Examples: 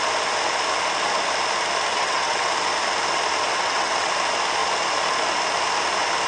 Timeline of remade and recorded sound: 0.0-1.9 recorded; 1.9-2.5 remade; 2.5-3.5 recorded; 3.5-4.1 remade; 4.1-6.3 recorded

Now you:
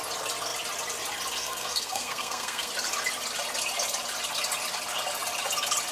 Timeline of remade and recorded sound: 0.0-1.4 recorded; 1.4-2.7 remade; 2.7-5.9 recorded

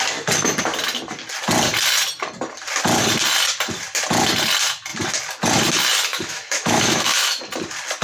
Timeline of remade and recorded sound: 0.0-6.1 recorded; 6.1-7.4 remade; 7.4-8.0 recorded

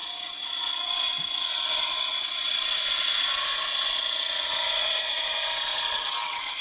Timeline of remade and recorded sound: 0.0-4.0 remade; 4.0-4.8 recorded; 4.8-5.3 remade; 5.3-5.7 recorded; 5.7-6.6 remade

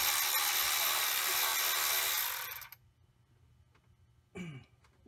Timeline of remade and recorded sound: 0.0-5.1 recorded

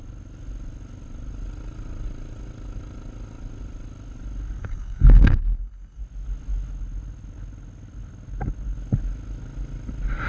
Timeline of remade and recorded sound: 0.0-4.6 recorded; 4.6-6.0 remade; 6.0-10.3 recorded